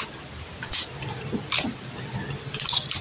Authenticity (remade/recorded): recorded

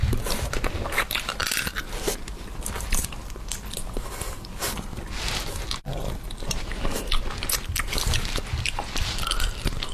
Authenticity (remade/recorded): recorded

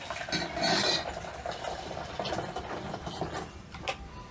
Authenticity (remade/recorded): recorded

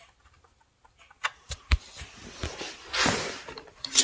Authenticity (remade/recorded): recorded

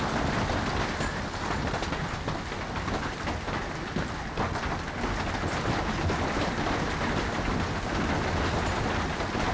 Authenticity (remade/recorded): recorded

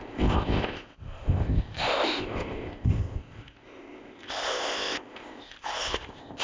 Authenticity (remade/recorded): remade